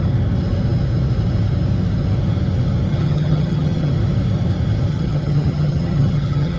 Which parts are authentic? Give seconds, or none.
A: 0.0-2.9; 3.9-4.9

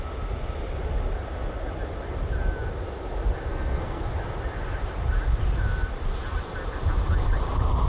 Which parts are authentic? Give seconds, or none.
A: 0.0-3.5; 4.0-7.9

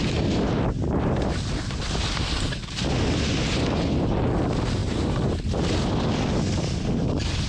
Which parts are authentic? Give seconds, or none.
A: 0.0-7.5